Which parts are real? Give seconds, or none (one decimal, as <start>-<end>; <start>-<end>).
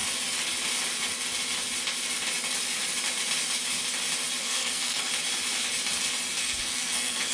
0.0-4.4; 5.1-6.4